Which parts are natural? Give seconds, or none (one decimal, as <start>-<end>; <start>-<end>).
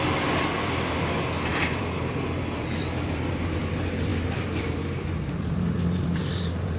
none